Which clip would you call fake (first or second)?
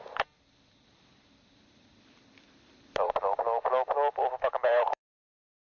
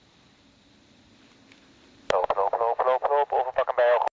first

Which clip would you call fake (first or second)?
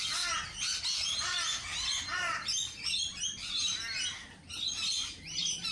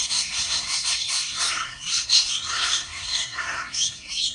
second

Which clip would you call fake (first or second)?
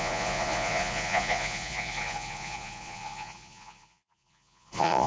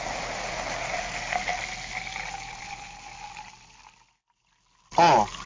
first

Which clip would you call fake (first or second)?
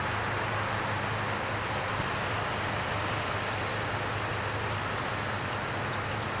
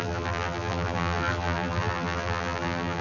second